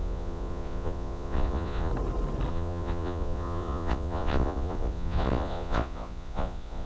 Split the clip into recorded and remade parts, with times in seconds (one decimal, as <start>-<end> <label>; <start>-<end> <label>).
0.0-1.9 remade; 1.9-2.5 recorded; 2.5-6.9 remade